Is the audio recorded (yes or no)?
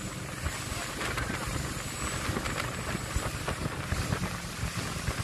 yes